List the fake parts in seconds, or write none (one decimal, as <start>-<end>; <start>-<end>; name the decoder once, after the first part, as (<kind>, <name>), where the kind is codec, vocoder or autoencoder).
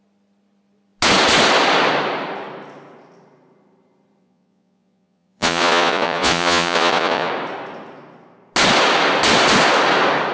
4.2-7.3 (vocoder, Vocos)